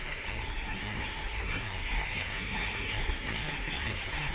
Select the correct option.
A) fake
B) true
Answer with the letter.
A